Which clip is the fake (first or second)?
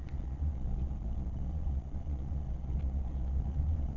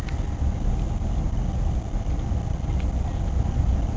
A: first